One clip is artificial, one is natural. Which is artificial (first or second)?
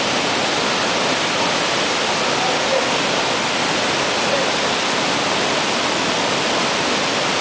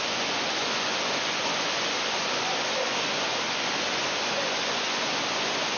second